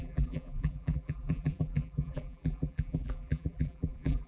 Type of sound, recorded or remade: remade